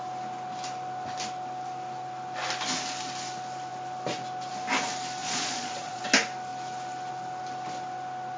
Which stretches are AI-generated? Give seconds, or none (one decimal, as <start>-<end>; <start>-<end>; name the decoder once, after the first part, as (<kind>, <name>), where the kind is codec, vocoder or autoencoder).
5.2-6.0 (vocoder, Vocos)